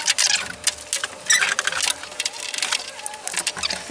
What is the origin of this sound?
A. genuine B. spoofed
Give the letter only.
A